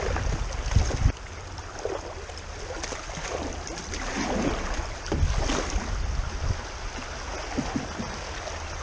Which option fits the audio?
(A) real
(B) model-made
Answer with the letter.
A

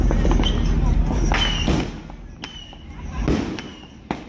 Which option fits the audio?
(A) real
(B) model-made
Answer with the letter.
A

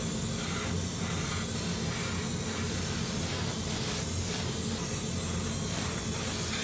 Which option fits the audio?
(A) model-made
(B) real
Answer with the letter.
B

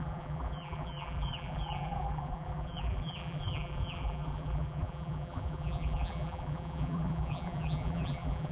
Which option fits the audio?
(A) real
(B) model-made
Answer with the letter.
B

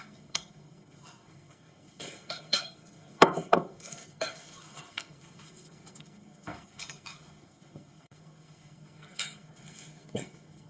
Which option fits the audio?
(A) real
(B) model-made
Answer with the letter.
B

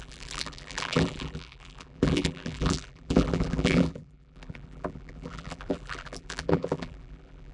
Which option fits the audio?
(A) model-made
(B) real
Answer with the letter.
A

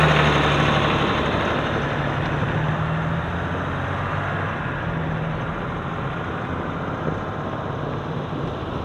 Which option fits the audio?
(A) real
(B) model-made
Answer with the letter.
A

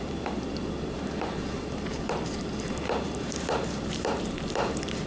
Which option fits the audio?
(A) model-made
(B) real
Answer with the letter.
A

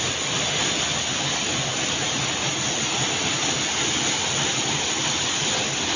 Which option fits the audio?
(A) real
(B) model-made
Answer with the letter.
A